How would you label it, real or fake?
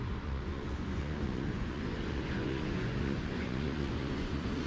fake